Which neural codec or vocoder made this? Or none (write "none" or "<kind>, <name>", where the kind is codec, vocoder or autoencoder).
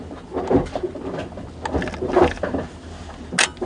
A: none